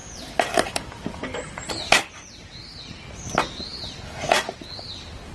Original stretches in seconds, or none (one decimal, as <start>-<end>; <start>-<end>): 1.7-5.3